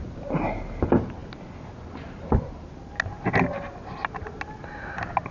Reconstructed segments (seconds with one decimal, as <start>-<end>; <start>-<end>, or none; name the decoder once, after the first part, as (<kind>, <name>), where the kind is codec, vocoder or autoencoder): none